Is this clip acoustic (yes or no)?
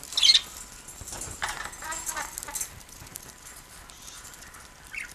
yes